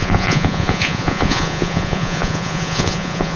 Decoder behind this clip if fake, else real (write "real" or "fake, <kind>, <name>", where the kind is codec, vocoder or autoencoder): fake, vocoder, Vocos